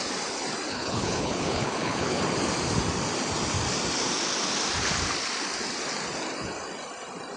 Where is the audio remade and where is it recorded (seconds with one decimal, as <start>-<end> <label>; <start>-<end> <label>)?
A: 0.0-0.7 recorded; 0.7-2.2 remade; 2.2-7.4 recorded